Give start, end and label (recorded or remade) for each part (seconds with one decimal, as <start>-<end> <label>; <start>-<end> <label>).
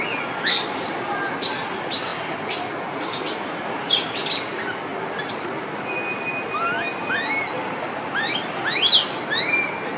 0.0-10.0 recorded